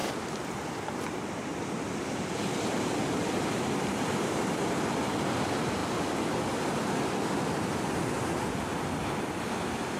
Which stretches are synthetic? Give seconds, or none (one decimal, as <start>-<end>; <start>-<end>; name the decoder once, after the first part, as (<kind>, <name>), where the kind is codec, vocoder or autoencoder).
0.0-1.7 (vocoder, BigVGAN v2)